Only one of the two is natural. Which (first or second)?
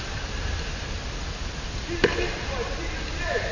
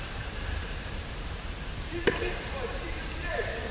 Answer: first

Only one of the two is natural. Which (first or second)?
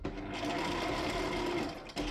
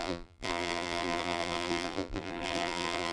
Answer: first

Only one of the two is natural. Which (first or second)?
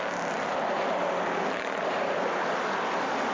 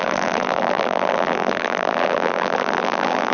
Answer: first